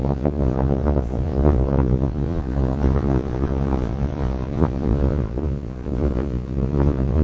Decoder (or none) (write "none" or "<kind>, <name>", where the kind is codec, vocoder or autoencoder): vocoder, Vocos